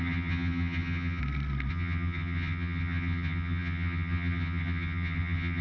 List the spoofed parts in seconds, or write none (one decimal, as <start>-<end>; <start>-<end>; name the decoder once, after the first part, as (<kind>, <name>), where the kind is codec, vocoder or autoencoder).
0.0-1.2 (vocoder, HiFi-GAN); 1.7-5.6